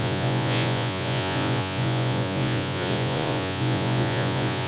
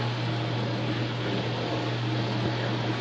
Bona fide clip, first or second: second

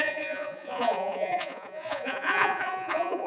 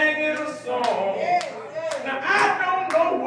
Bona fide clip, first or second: second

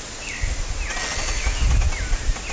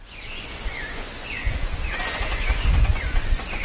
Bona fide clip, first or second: first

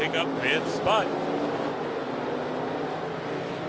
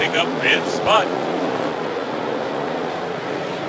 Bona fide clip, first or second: first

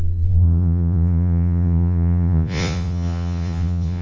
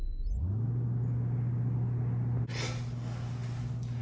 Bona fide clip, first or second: second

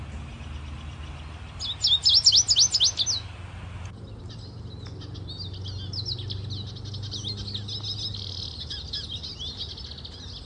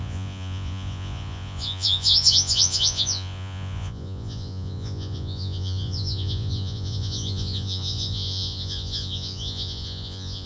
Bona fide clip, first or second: first